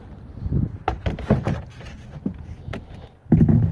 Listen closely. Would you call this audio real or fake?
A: real